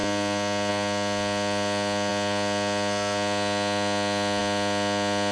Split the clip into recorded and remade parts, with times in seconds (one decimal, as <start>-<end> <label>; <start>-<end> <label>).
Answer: 0.0-5.3 recorded